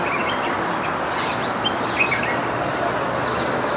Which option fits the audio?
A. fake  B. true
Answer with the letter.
B